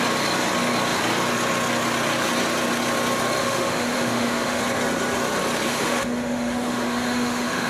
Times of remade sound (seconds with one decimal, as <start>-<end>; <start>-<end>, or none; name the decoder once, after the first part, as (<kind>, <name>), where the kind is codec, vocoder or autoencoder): 3.4-4.6 (autoencoder, DAC-VAE); 5.7-7.7